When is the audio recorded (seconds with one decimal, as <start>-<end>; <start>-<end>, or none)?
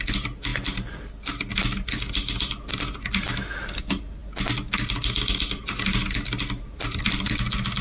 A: 0.0-7.8